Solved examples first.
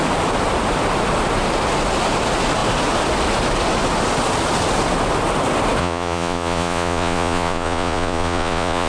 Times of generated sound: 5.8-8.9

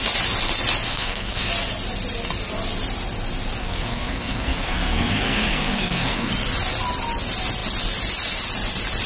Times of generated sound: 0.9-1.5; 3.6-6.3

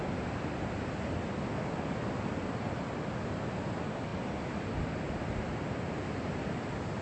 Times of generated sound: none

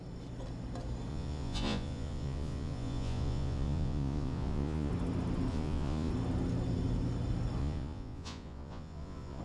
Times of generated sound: 1.1-4.9; 5.5-6.1; 7.6-9.4

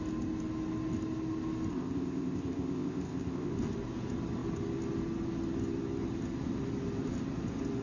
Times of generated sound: 1.7-3.5

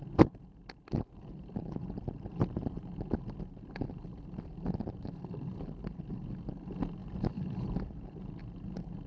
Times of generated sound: none

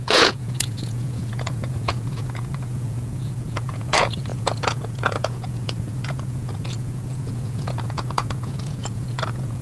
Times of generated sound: 0.0-9.6

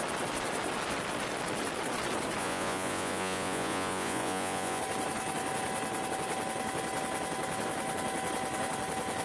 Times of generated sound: 2.4-4.8